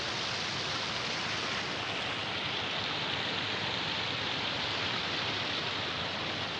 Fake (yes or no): no